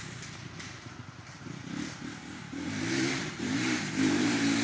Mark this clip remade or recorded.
remade